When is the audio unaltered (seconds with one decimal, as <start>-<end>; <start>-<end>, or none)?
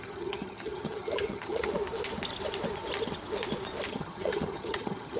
1.7-3.9